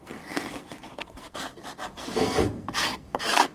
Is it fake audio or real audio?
fake